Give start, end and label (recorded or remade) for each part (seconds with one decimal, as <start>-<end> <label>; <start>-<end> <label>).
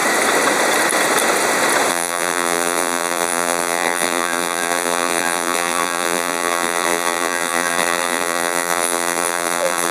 0.0-1.9 recorded; 1.9-9.9 remade